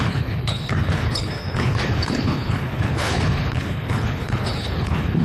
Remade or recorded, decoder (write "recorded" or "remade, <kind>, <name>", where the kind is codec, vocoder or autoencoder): remade, codec, HILCodec